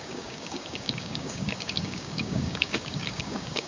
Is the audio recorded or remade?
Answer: remade